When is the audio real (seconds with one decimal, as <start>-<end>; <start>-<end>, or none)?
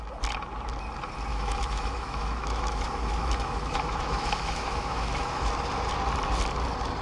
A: 0.0-1.3; 5.5-7.0